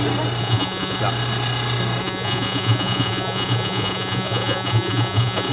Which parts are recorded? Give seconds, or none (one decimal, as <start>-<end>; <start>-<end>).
0.0-0.4; 1.0-2.0